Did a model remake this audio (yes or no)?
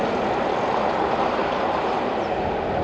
no